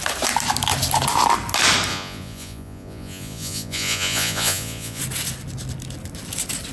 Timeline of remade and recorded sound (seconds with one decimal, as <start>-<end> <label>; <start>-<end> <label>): 0.0-1.9 recorded; 1.9-5.0 remade; 5.0-6.7 recorded